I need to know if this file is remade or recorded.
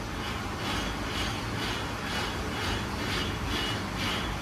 recorded